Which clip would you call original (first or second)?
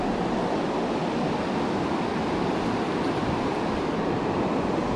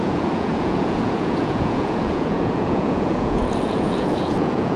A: first